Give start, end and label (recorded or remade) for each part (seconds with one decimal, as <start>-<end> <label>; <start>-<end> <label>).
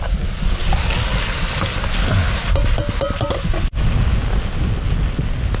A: 0.0-5.6 recorded